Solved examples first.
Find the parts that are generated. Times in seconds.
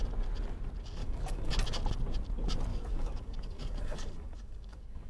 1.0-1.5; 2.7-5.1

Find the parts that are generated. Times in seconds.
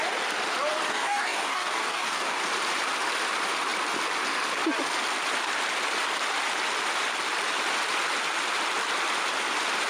0.9-2.4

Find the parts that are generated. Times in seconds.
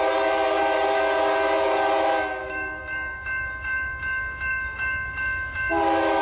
2.4-6.2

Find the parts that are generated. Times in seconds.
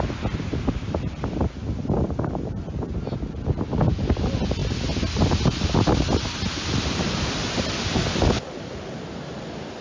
none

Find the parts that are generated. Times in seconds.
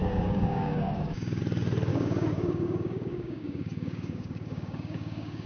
0.0-1.4; 1.9-5.5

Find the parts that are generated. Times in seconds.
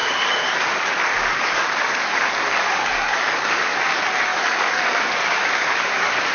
0.0-3.8; 4.3-6.3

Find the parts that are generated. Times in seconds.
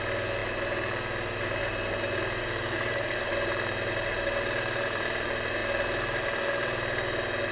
2.4-3.3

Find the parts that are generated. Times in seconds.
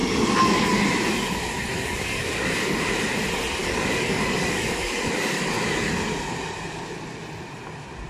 0.0-0.8; 1.7-2.8; 3.6-4.9